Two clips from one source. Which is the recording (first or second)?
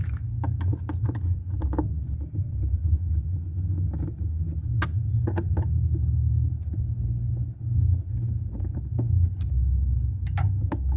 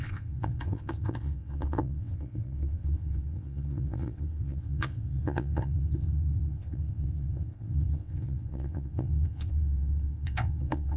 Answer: first